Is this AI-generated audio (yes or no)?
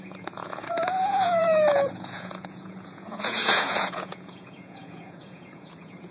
yes